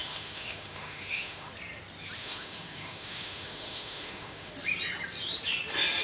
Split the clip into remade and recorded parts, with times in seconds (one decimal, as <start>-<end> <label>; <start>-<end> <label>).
0.0-1.5 remade; 1.5-2.2 recorded; 2.2-4.5 remade; 4.5-6.0 recorded

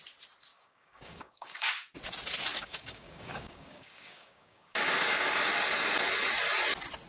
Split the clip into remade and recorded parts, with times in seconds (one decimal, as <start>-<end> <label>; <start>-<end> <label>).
0.0-0.5 recorded; 0.5-1.7 remade; 1.7-2.5 recorded; 2.5-5.4 remade; 5.4-7.1 recorded

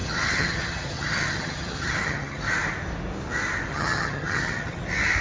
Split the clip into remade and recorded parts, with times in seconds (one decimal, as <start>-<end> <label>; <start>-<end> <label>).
0.0-2.4 remade; 2.4-3.7 recorded; 3.7-4.8 remade; 4.8-5.2 recorded

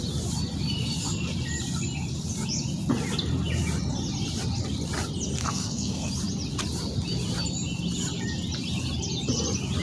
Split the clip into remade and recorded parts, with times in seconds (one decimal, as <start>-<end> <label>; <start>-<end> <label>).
0.0-5.4 recorded; 5.4-6.1 remade; 6.1-9.8 recorded

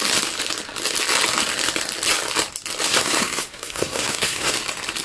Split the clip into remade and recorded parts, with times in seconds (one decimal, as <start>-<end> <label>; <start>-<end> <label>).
0.0-2.9 recorded; 2.9-4.5 remade; 4.5-5.0 recorded